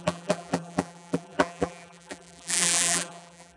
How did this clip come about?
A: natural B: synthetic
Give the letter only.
B